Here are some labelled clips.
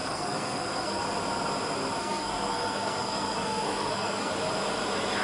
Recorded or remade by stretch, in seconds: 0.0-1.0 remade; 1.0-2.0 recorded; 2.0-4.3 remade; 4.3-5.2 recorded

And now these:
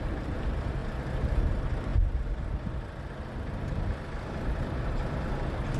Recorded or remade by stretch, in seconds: 0.0-5.8 remade

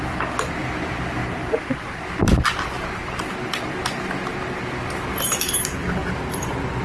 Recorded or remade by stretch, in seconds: 0.0-6.8 recorded

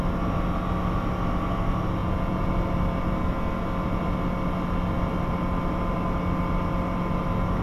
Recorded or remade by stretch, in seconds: 0.0-2.0 recorded; 2.0-2.5 remade; 2.5-7.6 recorded